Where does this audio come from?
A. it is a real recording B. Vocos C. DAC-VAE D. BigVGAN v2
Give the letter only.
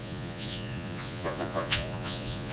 B